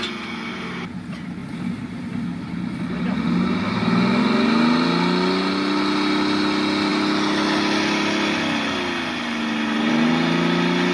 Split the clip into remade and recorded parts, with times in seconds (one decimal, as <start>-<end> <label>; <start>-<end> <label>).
0.0-10.9 recorded